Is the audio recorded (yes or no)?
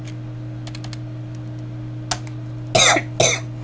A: yes